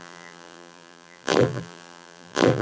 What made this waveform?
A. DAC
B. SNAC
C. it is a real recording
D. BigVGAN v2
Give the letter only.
D